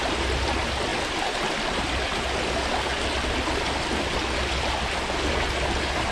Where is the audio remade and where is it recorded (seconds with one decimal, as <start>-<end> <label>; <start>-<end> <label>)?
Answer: 0.0-6.1 recorded